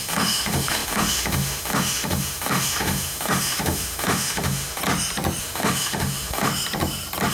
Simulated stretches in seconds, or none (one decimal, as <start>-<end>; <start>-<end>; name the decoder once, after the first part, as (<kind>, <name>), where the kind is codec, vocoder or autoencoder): 0.0-4.8 (autoencoder, DAC-VAE); 5.4-6.5